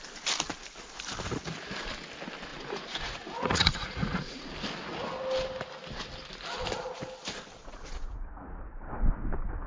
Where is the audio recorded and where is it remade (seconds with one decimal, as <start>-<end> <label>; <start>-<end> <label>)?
0.0-2.5 recorded; 2.5-4.5 remade; 4.5-7.6 recorded; 7.6-8.6 remade; 8.6-9.7 recorded